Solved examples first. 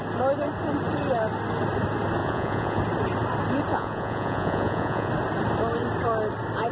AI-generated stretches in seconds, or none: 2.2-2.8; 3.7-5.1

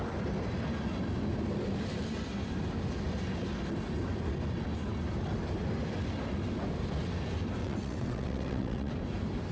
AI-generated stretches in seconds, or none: 7.6-8.9

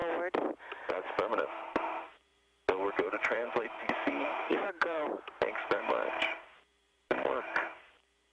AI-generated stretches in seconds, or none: 0.9-2.3; 2.9-8.3

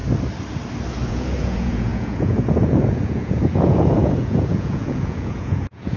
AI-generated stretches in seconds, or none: 1.1-6.0

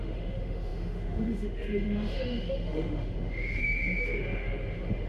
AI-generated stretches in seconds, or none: 0.0-5.1

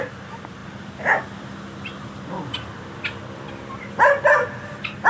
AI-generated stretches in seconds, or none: none